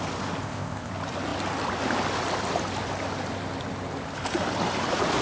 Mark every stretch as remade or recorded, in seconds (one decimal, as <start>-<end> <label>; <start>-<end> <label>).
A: 0.0-0.4 recorded; 0.4-0.9 remade; 0.9-5.2 recorded